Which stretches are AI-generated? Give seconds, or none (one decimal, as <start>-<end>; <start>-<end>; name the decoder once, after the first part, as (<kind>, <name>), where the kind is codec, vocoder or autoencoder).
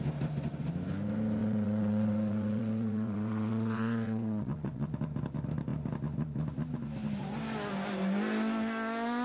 1.4-4.9 (vocoder, WaveNeXt)